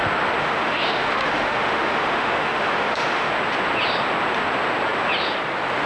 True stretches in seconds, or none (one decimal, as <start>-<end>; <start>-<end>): 0.0-0.4; 3.3-5.9